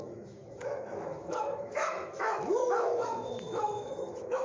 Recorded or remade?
remade